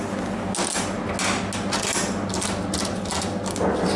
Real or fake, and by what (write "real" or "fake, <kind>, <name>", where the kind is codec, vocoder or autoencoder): real